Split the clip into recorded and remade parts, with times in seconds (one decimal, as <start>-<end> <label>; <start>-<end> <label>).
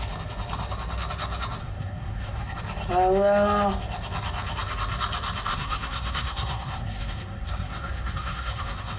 0.0-1.6 recorded; 1.6-2.6 remade; 2.6-5.5 recorded; 5.5-9.0 remade